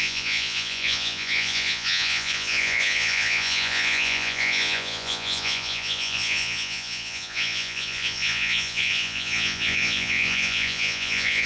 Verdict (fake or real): fake